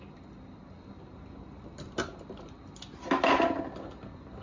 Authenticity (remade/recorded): recorded